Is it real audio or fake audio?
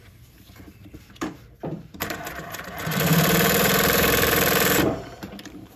fake